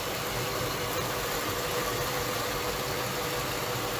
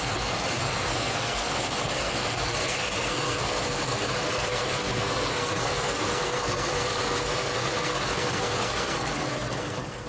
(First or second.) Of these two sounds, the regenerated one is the second